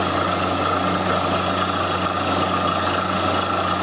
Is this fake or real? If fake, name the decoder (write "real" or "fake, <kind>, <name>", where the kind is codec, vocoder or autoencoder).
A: real